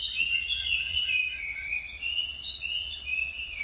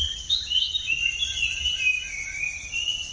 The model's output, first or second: first